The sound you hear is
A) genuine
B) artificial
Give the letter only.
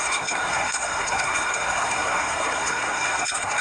B